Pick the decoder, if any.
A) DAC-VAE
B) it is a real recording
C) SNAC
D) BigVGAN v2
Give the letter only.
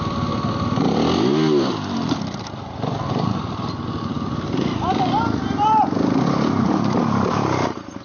D